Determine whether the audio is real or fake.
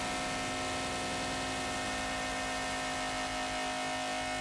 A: real